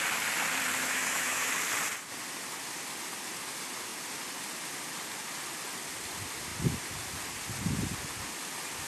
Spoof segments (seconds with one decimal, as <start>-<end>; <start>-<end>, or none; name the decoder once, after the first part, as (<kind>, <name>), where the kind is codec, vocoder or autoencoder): 0.8-1.5 (autoencoder, DAC-VAE)